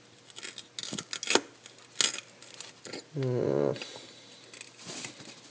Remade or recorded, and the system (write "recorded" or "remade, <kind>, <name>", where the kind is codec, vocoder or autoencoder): recorded